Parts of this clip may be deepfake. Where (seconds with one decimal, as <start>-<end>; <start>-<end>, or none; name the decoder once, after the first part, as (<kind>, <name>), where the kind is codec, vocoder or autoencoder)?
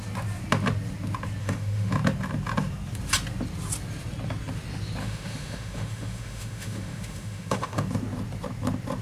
1.4-1.9 (autoencoder, DAC-VAE); 5.0-7.9